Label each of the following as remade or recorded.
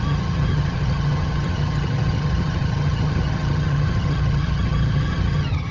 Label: remade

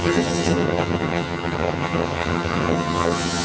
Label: remade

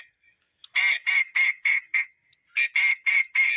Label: recorded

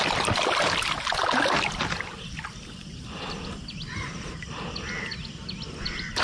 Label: recorded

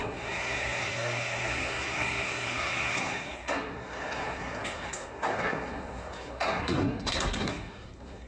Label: remade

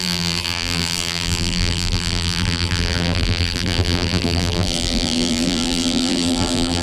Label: remade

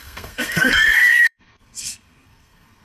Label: remade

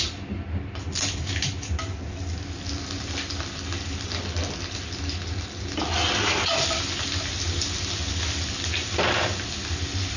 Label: recorded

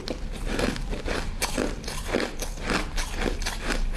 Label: recorded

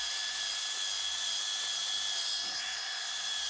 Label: recorded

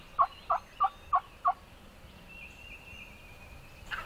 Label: recorded